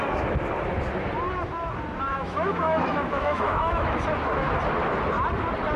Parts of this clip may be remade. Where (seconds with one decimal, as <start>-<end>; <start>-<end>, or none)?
2.1-4.0